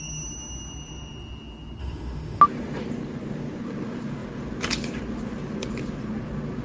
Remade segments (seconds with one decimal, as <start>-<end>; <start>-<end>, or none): 1.8-2.4